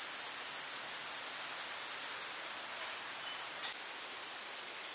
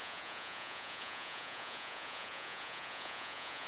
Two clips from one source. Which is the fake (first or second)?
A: second